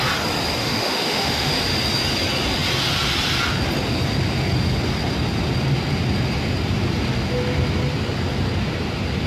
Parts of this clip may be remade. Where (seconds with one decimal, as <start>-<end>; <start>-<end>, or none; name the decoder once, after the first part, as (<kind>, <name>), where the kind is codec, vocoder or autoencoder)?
0.6-1.5 (autoencoder, DAC-VAE)